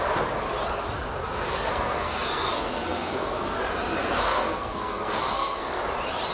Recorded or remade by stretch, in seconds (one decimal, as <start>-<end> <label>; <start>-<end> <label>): 0.0-1.2 recorded; 1.2-3.6 remade; 3.6-4.0 recorded; 4.0-5.8 remade; 5.8-6.3 recorded